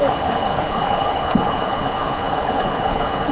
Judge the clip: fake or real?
fake